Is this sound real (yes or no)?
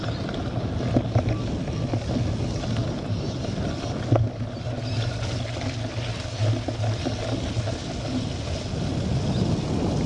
yes